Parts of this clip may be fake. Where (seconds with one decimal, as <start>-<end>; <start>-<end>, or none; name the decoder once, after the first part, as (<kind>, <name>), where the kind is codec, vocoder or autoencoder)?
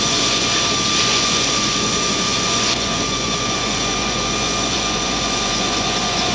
0.0-0.5 (vocoder, Vocos); 1.0-6.3